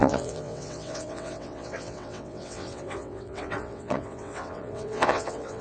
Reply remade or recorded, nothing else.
remade